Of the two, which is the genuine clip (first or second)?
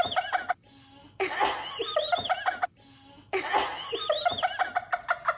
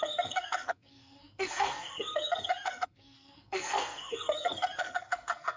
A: first